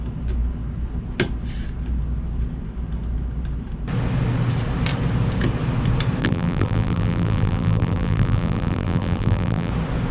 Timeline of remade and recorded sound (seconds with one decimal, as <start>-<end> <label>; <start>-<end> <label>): 0.0-6.2 recorded; 6.2-9.7 remade; 9.7-10.1 recorded